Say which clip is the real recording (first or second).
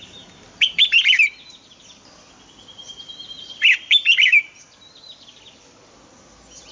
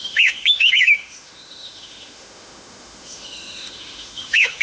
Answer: first